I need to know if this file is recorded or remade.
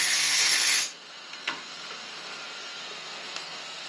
remade